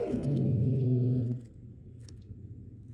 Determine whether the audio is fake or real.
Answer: fake